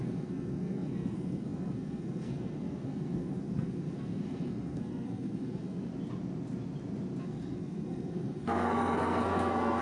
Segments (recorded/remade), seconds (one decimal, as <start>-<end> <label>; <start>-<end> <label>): 0.0-5.9 remade; 5.9-7.2 recorded; 7.2-9.8 remade